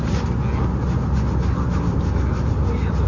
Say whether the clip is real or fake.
real